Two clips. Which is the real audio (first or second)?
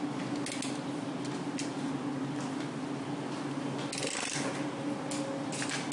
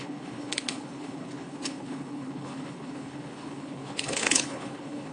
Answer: first